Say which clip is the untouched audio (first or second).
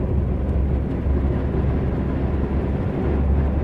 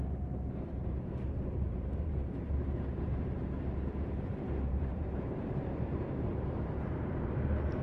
first